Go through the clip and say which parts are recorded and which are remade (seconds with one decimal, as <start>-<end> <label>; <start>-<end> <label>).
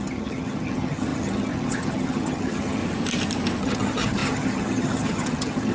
0.0-2.8 remade; 2.8-3.6 recorded; 3.6-5.7 remade